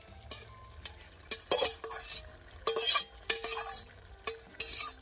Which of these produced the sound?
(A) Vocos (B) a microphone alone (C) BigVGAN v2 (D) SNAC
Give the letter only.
B